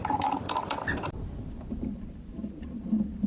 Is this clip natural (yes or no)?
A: no